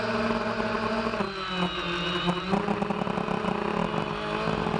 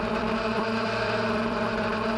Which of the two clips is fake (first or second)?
second